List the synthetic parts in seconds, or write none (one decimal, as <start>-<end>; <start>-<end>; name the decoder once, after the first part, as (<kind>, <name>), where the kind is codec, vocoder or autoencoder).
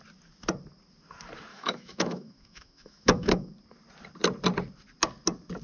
1.5-3.5 (autoencoder, DAC-VAE)